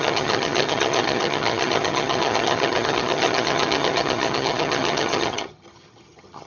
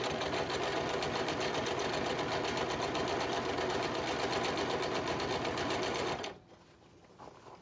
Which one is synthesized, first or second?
first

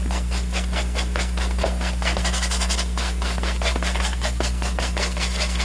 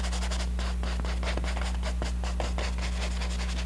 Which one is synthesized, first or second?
first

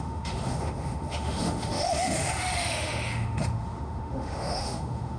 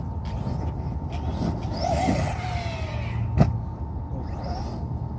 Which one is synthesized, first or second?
first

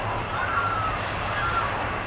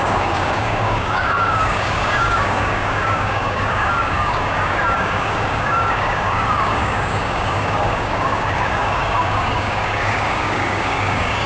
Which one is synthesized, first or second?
second